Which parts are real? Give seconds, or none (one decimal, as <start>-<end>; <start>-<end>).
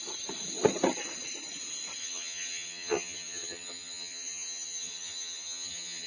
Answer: 0.0-2.0